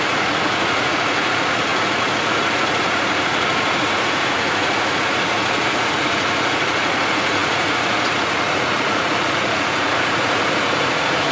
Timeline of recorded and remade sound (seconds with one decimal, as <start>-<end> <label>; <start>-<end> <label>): 0.0-11.3 remade